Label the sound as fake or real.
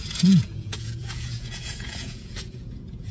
fake